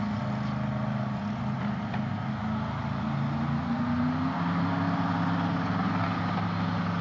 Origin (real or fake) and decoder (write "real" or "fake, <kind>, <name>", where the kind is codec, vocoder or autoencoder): real